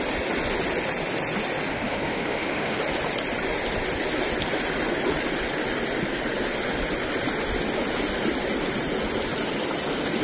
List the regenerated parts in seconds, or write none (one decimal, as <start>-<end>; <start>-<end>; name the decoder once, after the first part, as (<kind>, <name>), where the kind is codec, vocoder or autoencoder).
1.7-2.8 (autoencoder, DAC-VAE)